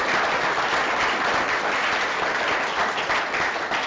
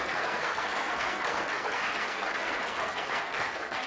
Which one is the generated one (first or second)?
second